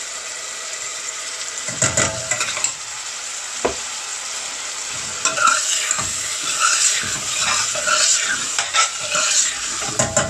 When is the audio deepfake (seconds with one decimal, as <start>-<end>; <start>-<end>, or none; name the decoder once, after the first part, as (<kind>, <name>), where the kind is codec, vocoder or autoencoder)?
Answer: 0.9-2.8 (vocoder, BigVGAN v2); 8.1-9.9